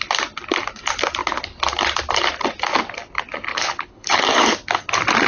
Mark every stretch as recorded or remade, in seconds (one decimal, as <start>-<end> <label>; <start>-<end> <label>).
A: 0.0-3.5 recorded; 3.5-4.2 remade; 4.2-5.3 recorded